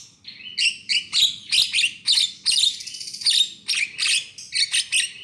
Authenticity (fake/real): real